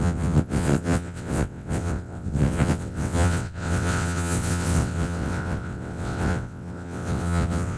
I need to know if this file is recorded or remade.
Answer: remade